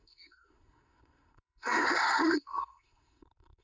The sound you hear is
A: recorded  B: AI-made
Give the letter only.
B